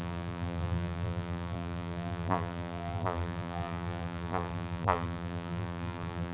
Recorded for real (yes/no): no